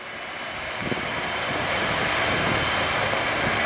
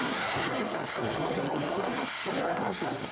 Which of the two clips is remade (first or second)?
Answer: second